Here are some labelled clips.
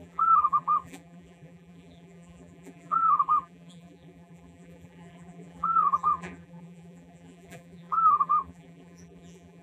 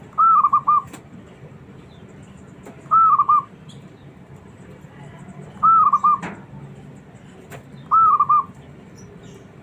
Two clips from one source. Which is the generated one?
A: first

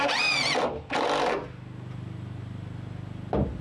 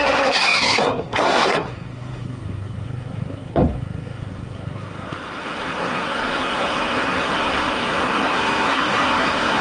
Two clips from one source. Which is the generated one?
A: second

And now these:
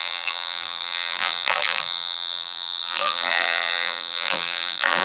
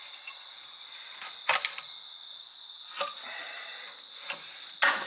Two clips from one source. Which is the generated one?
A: first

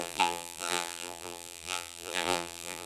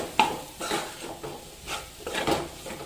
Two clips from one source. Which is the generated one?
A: first